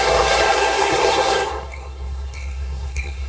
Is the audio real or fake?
fake